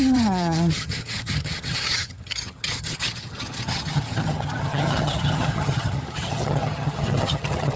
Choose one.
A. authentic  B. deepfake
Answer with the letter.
B